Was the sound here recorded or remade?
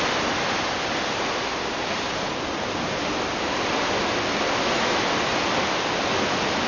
recorded